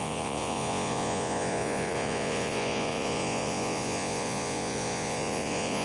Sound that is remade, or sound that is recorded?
remade